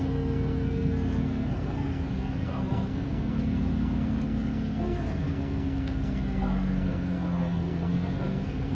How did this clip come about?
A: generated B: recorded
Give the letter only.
A